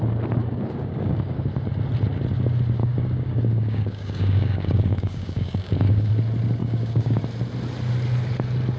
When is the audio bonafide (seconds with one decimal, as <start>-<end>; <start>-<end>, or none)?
0.0-0.4; 1.5-2.8; 6.1-6.6; 7.2-8.8